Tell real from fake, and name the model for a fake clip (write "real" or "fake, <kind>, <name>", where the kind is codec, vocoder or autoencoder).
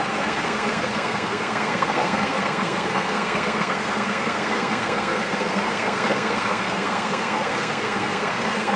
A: fake, codec, SNAC